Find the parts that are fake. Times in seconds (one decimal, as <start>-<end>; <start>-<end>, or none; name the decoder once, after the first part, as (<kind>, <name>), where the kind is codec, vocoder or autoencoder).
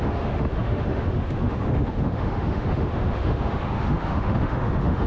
0.0-5.1 (autoencoder, DAC-VAE)